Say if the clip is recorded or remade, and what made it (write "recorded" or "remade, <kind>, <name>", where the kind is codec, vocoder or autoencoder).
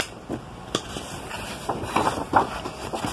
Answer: recorded